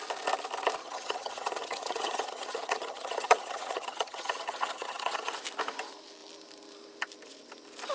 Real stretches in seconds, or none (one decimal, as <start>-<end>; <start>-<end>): 0.0-0.8; 5.3-7.9